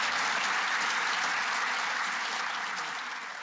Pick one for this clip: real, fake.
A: real